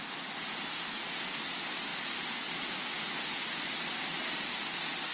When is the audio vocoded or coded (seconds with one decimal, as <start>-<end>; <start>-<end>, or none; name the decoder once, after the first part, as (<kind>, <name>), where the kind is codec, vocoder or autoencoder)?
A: none